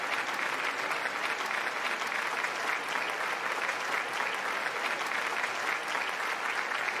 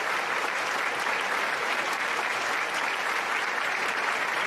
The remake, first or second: second